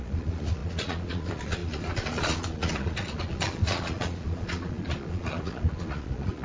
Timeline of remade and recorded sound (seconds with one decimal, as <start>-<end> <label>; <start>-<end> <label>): 0.0-6.4 remade